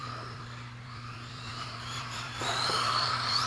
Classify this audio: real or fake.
fake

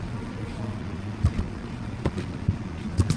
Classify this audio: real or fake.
fake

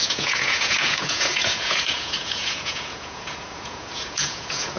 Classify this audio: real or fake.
fake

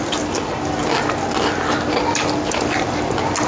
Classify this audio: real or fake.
real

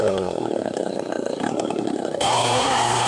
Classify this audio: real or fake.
fake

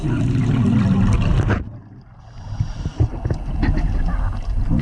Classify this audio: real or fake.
real